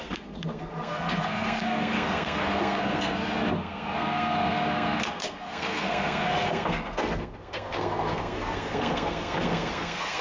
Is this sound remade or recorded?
remade